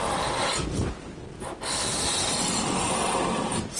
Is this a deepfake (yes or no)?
no